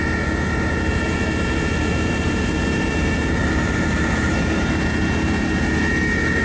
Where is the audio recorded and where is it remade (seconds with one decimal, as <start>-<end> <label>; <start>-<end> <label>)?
0.0-0.9 recorded; 0.9-4.7 remade; 4.7-6.4 recorded